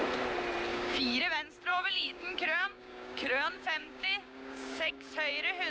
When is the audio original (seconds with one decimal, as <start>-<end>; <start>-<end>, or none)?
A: 0.0-0.7; 1.2-1.7; 5.1-5.7